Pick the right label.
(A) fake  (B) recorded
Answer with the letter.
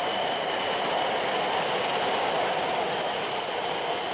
B